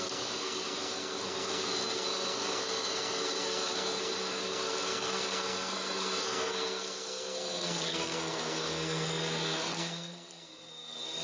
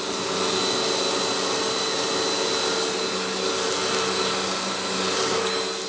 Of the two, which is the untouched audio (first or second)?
second